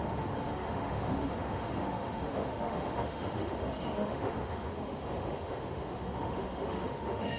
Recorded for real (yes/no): no